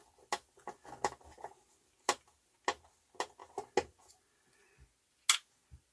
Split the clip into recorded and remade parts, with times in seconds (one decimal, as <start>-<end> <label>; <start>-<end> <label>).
0.0-5.9 recorded